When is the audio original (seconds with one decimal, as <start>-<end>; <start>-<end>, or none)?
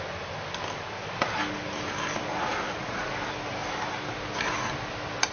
0.0-2.3; 3.1-5.3